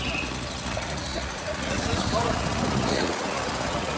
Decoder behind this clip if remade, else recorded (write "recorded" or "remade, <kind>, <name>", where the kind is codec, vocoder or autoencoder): remade, vocoder, Vocos